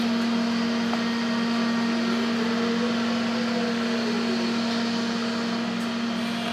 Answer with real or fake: real